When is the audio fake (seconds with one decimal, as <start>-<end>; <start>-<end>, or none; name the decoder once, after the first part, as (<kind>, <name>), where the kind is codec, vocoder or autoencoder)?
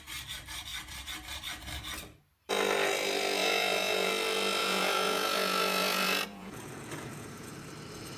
3.4-4.1 (vocoder, Vocos); 4.6-7.6